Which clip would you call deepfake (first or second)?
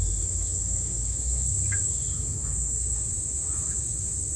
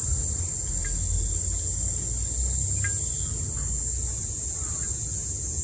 first